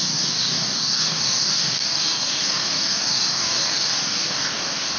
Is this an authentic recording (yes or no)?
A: no